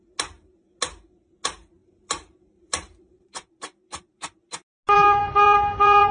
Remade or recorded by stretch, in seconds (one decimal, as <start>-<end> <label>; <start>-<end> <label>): 0.0-1.8 recorded; 1.8-3.5 remade; 3.5-6.1 recorded